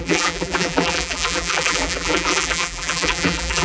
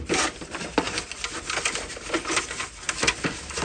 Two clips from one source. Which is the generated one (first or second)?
first